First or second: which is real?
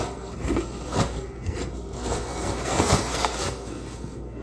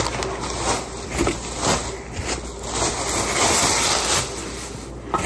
second